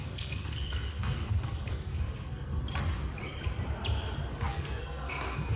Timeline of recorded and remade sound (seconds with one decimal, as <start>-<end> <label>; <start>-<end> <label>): 0.0-2.6 remade; 2.6-4.3 recorded; 4.3-5.6 remade